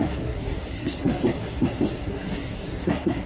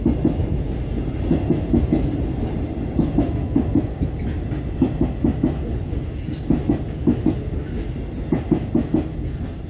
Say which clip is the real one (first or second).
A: second